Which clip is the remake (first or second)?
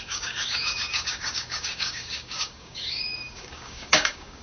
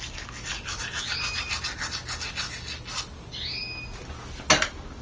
first